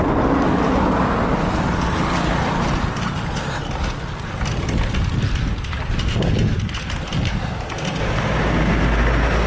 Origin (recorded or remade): recorded